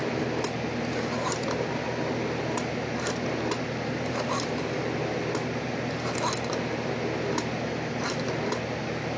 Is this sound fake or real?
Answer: real